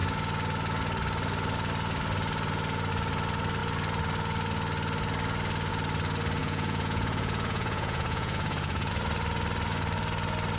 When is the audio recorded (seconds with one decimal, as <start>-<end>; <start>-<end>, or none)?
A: 0.0-6.4; 8.9-10.6